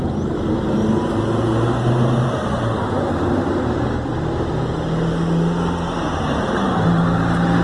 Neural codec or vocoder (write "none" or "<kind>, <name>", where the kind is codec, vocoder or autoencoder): none